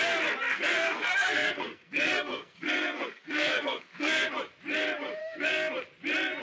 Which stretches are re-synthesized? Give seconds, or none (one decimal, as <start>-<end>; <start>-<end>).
0.5-4.3; 5.2-5.7